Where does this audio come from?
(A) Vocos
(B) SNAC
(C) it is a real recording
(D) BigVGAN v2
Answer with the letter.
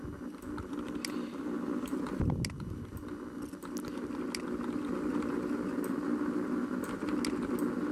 C